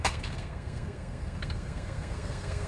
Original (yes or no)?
no